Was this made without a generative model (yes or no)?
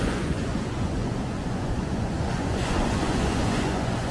no